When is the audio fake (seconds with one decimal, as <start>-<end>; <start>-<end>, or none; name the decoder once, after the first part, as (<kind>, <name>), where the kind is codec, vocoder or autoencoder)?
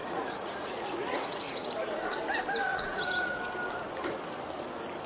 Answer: 0.0-1.7 (vocoder, Vocos); 2.7-3.4